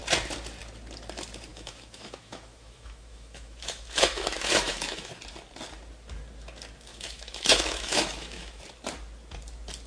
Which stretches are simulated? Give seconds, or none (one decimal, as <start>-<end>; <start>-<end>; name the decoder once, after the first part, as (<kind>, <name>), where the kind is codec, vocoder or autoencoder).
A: 1.5-5.1 (autoencoder, DAC-VAE); 6.9-8.6